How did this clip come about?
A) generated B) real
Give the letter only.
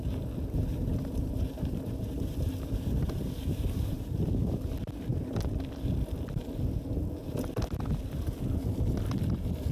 B